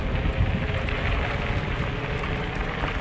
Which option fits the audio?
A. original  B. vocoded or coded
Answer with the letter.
A